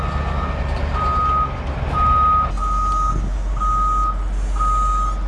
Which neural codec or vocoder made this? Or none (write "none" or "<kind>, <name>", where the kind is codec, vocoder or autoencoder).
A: none